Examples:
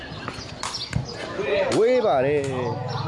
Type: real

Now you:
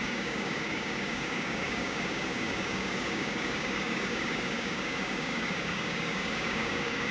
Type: fake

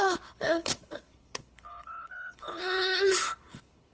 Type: fake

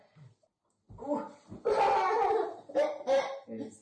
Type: real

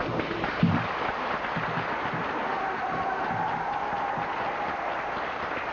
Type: real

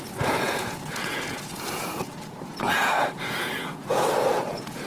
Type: fake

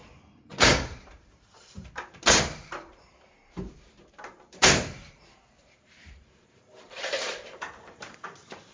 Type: fake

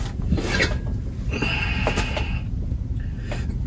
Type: real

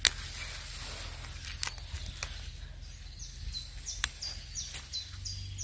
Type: real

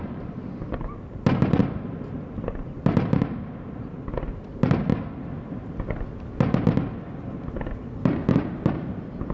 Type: real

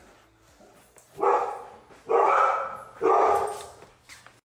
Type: real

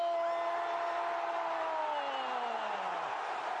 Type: real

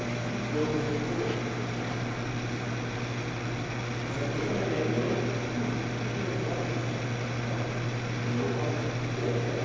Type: real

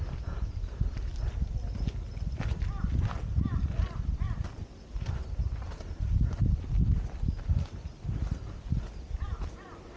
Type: real